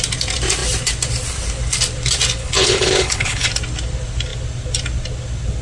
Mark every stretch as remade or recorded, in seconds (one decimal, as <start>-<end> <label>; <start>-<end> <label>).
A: 0.0-2.4 recorded; 2.4-3.5 remade; 3.5-5.6 recorded